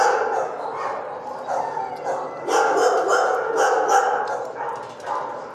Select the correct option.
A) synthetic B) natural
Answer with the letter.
B